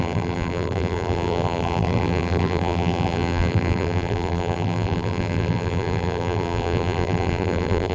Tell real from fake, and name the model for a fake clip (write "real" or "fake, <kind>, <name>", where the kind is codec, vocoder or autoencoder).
fake, vocoder, BigVGAN v2